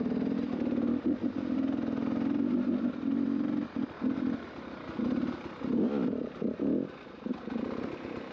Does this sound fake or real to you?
real